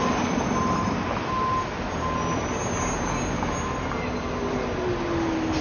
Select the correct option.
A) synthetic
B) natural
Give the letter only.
B